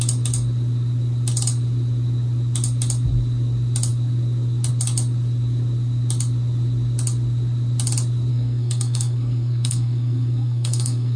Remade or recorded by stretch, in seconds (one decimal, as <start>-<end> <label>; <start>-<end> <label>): 0.0-8.3 recorded; 8.3-11.2 remade